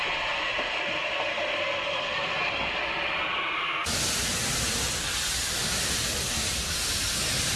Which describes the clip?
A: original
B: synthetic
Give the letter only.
A